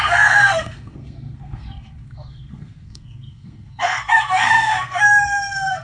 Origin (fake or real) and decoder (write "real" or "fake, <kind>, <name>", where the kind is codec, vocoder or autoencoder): fake, codec, SNAC